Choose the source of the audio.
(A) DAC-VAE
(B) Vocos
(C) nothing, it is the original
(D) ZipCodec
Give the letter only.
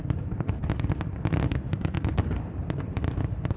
C